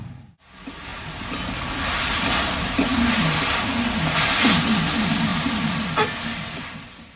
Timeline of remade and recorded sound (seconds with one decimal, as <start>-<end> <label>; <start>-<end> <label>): 0.0-7.2 recorded